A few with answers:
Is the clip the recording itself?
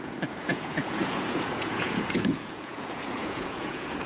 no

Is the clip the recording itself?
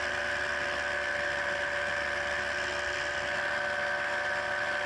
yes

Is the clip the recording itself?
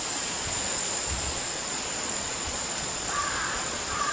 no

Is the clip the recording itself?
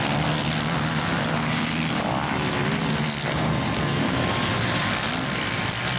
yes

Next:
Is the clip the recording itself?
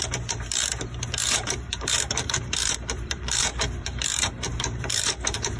no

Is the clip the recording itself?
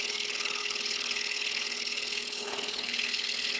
no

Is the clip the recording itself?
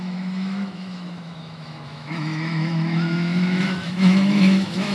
no